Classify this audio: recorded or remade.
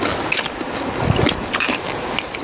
recorded